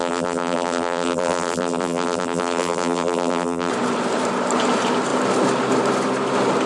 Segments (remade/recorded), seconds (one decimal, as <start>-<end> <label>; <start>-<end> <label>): 0.0-3.7 remade; 3.7-6.7 recorded